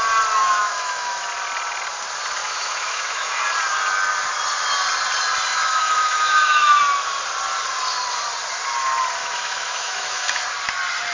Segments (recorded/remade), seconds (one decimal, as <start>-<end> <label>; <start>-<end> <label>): 0.0-0.4 recorded; 0.4-1.3 remade; 1.3-2.4 recorded; 2.4-3.4 remade; 3.4-5.5 recorded; 5.5-6.8 remade; 6.8-9.2 recorded; 9.2-10.4 remade; 10.4-11.1 recorded